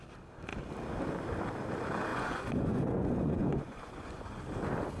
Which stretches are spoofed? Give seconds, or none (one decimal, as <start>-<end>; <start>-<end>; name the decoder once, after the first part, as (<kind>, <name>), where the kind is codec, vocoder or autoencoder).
2.1-4.4 (vocoder, Vocos)